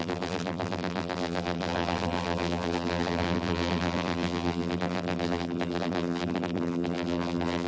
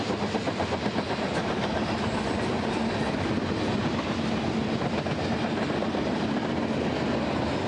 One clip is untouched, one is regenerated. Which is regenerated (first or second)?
first